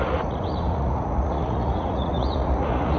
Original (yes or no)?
no